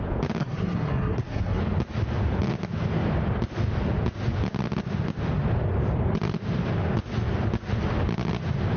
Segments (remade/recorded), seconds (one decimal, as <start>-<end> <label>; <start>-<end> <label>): 0.0-0.4 recorded; 0.4-1.6 remade; 1.6-8.8 recorded

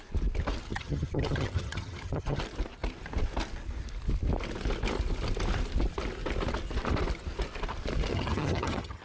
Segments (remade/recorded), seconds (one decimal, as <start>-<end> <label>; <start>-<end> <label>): 0.0-0.7 recorded; 0.7-2.4 remade; 2.4-8.1 recorded; 8.1-9.0 remade

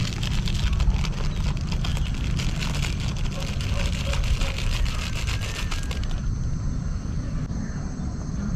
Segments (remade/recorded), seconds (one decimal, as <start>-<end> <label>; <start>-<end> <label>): 0.0-8.6 recorded

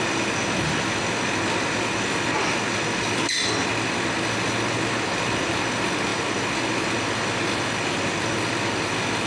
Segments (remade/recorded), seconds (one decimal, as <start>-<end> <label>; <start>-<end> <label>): 0.0-9.3 recorded

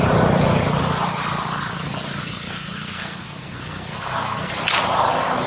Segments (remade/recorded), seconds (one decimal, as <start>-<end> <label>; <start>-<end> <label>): 0.0-2.2 recorded; 2.2-4.5 remade; 4.5-5.5 recorded

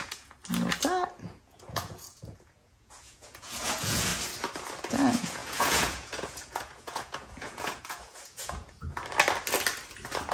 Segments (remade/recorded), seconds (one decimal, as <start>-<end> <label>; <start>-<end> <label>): 0.0-0.4 remade; 0.4-1.2 recorded; 1.2-4.1 remade; 4.1-4.9 recorded; 4.9-9.0 remade; 9.0-10.3 recorded